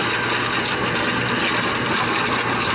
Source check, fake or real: real